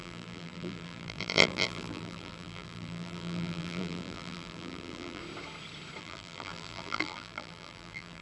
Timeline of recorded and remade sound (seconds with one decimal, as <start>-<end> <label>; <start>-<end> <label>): 0.0-5.2 remade; 5.2-6.0 recorded; 6.0-8.2 remade